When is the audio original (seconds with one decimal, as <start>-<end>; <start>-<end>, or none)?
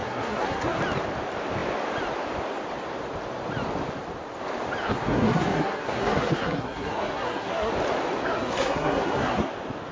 0.8-4.8; 7.7-8.2; 9.5-9.9